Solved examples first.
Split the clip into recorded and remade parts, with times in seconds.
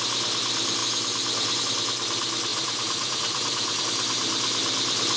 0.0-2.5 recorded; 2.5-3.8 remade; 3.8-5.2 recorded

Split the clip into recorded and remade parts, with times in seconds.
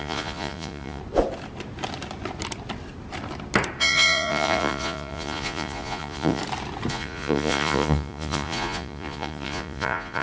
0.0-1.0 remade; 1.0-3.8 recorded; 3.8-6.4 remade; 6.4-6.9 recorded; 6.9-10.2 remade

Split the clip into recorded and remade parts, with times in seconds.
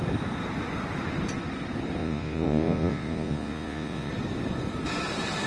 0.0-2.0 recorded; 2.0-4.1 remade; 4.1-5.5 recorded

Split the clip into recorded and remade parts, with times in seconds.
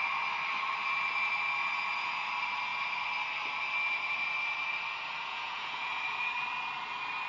0.0-1.6 recorded; 1.6-2.3 remade; 2.3-5.3 recorded; 5.3-6.3 remade; 6.3-7.3 recorded